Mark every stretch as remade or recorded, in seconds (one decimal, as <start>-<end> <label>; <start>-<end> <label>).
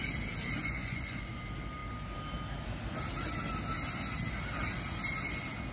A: 0.0-0.6 recorded; 0.6-1.4 remade; 1.4-5.7 recorded